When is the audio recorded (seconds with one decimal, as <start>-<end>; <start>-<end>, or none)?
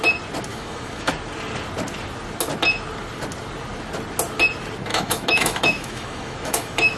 0.0-0.5; 1.1-4.9